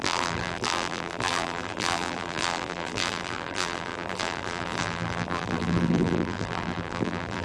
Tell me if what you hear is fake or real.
fake